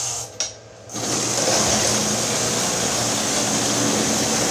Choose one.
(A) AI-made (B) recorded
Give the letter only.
B